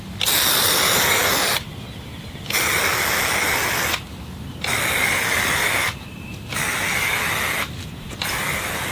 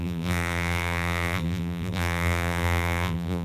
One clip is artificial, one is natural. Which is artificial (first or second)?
second